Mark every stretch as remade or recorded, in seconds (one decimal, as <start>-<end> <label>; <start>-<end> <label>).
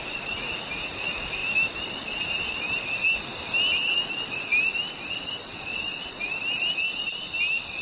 0.0-7.8 recorded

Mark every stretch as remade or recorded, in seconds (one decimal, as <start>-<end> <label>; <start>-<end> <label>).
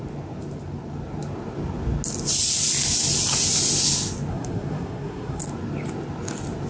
0.0-4.3 recorded; 4.3-5.4 remade; 5.4-6.7 recorded